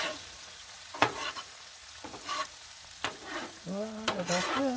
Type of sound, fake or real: fake